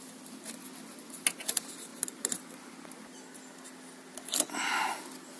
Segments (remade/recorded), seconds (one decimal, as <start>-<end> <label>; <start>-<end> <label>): 0.0-5.4 recorded